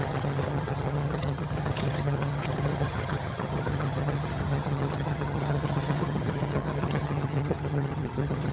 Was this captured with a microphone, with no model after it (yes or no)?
no